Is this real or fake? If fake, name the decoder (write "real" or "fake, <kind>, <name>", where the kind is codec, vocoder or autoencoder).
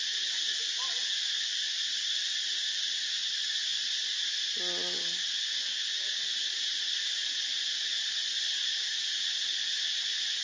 real